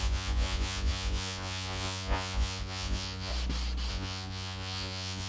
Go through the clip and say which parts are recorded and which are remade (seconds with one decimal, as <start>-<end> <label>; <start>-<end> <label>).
0.0-3.3 remade; 3.3-3.9 recorded; 3.9-5.3 remade